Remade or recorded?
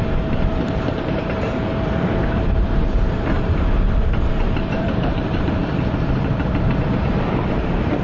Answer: remade